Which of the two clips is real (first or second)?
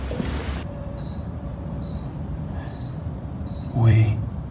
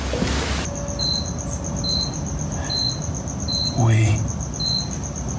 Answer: second